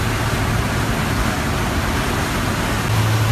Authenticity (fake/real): real